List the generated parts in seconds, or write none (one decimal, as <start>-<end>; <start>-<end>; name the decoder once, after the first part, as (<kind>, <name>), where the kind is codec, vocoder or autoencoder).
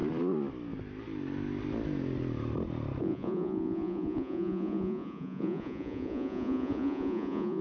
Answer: 3.0-7.6 (vocoder, Vocos)